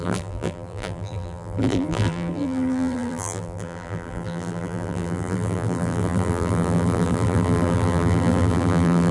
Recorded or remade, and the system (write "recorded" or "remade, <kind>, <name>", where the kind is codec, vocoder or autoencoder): remade, vocoder, BigVGAN v2